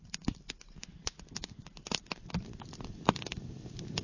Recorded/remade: recorded